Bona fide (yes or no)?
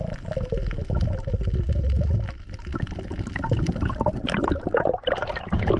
yes